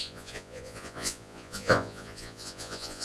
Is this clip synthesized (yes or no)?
yes